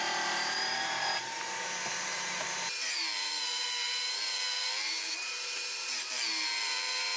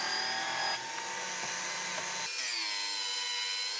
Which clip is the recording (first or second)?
second